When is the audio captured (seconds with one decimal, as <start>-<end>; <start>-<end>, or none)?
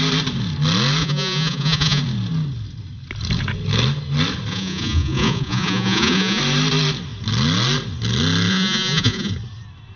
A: 0.0-1.0; 2.0-4.5; 6.4-8.5; 9.3-10.0